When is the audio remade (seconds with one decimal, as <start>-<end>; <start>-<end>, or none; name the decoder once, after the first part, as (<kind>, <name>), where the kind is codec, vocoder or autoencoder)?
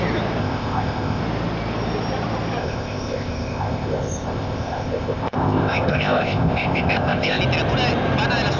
0.4-1.2 (codec, ZipCodec); 2.6-7.4